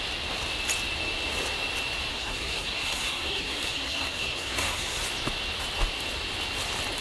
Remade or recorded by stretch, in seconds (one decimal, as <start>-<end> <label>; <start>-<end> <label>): 0.0-2.1 recorded; 2.1-5.0 remade; 5.0-7.0 recorded